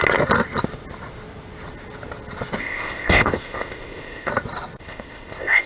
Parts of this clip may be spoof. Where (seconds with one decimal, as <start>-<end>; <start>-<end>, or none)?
2.6-4.3; 4.8-5.7